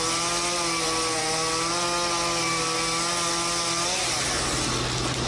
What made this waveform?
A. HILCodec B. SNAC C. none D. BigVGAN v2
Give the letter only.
C